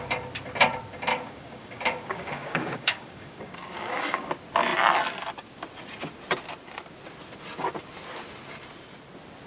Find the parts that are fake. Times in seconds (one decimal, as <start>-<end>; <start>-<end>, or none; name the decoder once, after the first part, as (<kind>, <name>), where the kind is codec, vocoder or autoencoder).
1.1-4.3 (codec, DAC)